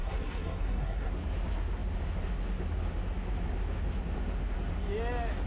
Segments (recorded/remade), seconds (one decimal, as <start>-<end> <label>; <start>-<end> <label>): 0.0-1.1 remade; 1.1-5.5 recorded